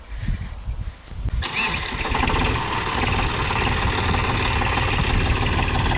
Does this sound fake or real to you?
real